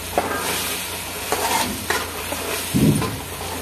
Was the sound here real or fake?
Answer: real